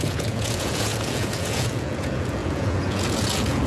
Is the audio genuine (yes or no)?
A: no